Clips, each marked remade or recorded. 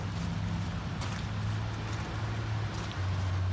recorded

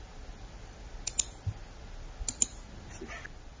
recorded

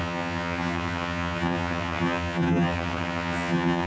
remade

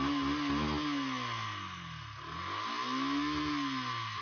recorded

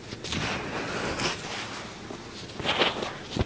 recorded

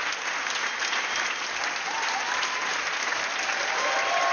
recorded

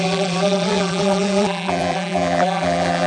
remade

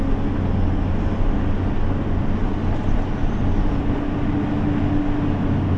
recorded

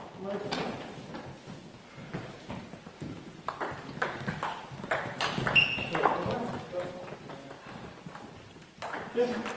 recorded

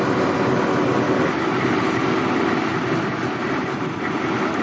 recorded